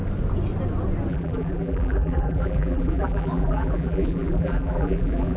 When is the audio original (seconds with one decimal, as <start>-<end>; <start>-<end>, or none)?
0.0-1.1